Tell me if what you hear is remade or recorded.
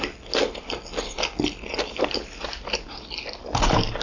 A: recorded